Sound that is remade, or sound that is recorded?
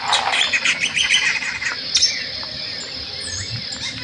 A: recorded